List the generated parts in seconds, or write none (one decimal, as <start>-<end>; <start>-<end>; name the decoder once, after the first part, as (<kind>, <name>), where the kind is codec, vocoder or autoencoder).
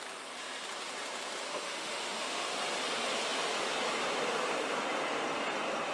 1.5-2.5 (autoencoder, DAC-VAE)